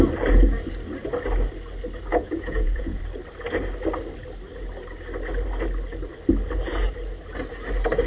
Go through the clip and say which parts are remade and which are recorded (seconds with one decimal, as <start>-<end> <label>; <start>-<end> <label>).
0.0-2.1 recorded; 2.1-3.0 remade; 3.0-8.1 recorded